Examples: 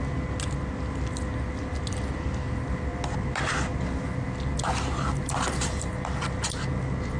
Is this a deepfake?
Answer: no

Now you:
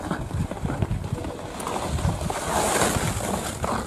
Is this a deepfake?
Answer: no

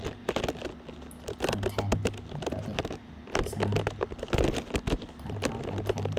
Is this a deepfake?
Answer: no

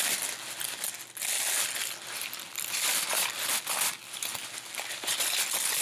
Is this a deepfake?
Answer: no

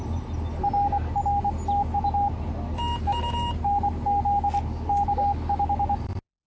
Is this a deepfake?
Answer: no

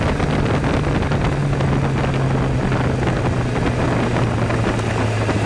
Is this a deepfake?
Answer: no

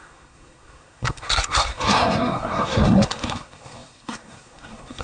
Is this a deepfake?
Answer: yes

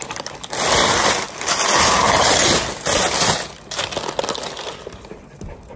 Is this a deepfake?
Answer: no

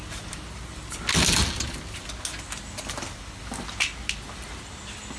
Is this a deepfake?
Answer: no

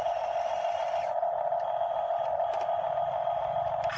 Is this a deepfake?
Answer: no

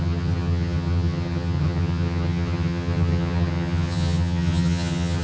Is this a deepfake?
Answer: yes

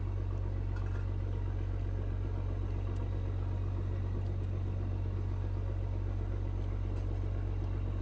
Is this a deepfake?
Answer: no